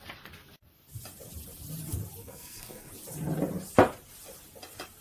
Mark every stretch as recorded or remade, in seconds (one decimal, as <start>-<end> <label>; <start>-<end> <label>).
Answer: 0.0-2.2 recorded; 2.2-2.9 remade; 2.9-5.0 recorded